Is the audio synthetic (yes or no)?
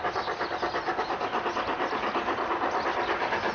no